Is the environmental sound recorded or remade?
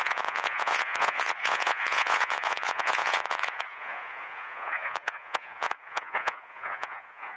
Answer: remade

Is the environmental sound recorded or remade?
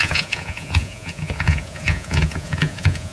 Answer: remade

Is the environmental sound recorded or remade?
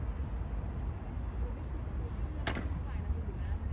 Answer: recorded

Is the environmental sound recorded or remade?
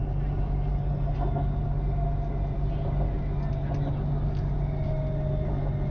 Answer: recorded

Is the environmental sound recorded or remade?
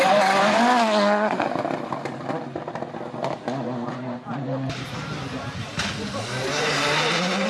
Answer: recorded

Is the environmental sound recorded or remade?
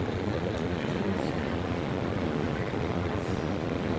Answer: remade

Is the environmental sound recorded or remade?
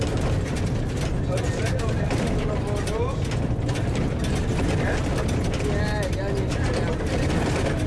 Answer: recorded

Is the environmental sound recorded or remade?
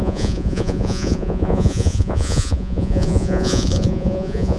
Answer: remade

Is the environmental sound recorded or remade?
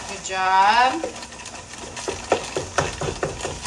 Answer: recorded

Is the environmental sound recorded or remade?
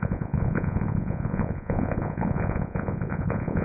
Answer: remade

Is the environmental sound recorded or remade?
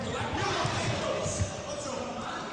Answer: recorded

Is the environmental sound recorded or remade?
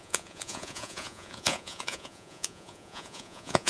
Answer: remade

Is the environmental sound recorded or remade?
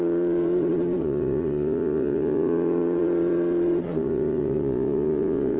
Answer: remade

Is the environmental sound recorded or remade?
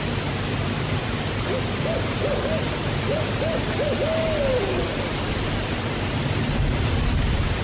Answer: recorded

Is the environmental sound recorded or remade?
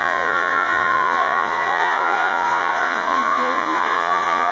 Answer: remade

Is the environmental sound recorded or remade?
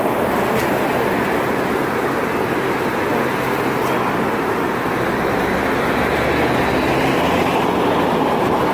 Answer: recorded